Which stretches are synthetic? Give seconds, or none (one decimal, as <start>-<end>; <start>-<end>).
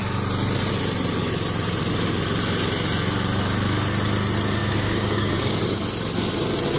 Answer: 4.6-5.6